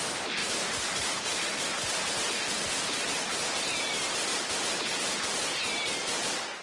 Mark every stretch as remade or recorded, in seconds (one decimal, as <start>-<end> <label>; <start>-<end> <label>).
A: 0.0-4.3 recorded; 4.3-5.2 remade; 5.2-6.6 recorded